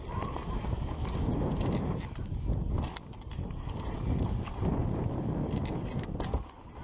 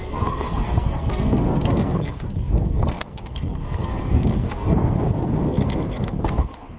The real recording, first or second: first